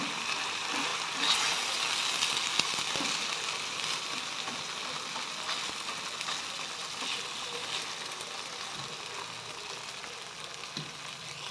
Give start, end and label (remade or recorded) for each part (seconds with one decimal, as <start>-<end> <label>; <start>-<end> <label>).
0.0-11.5 recorded